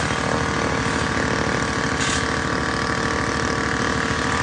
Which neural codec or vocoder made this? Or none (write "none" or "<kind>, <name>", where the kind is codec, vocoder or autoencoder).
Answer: none